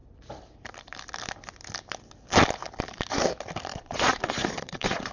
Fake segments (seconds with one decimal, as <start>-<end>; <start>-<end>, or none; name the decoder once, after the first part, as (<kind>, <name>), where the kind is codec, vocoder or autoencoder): 3.7-5.1 (vocoder, Vocos)